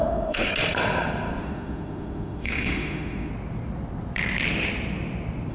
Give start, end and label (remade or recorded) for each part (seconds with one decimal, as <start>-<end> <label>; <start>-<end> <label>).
0.0-0.5 remade; 0.5-1.4 recorded; 1.4-3.3 remade; 3.3-5.5 recorded